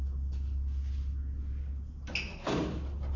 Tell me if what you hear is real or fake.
real